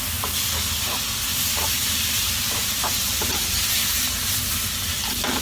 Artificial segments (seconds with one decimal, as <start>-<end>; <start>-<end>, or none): 1.3-4.5